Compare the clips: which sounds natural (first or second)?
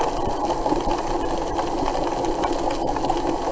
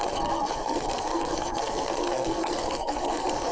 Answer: first